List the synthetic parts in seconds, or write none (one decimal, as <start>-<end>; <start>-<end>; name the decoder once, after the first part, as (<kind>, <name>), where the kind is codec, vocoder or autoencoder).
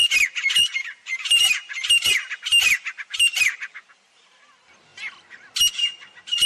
1.1-4.5 (vocoder, BigVGAN v2)